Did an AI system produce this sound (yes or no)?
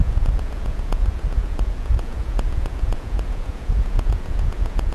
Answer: yes